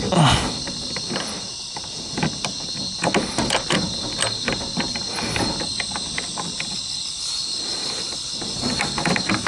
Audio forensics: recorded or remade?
recorded